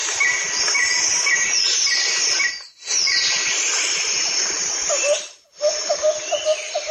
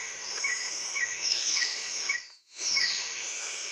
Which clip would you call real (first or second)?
first